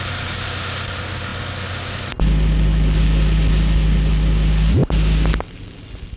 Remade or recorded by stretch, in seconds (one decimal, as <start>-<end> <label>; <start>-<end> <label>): 0.0-6.2 recorded